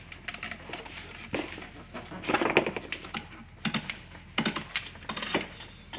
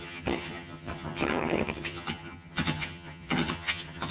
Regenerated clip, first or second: second